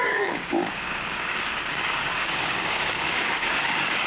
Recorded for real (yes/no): no